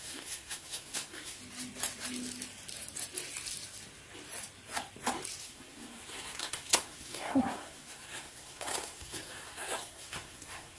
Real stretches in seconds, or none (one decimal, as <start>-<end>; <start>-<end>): 1.4-5.4